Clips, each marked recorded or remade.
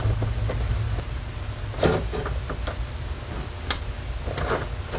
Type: recorded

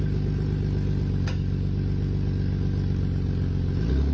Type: recorded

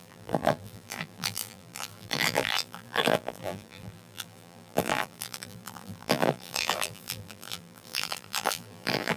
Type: remade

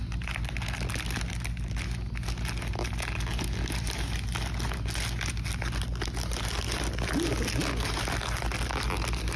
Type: recorded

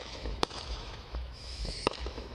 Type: remade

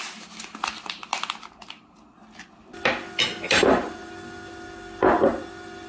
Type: recorded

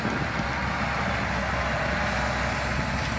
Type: recorded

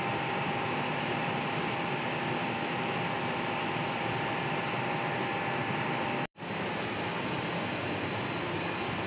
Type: remade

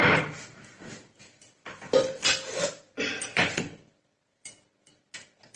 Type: remade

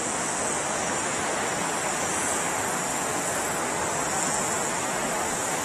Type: recorded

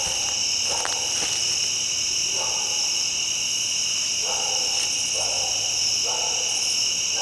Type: recorded